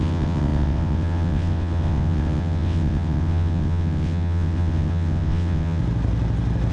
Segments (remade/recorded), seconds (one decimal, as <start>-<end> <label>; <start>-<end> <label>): 0.0-5.8 remade; 5.8-6.7 recorded